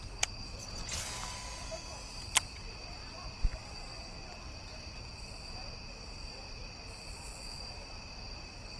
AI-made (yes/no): no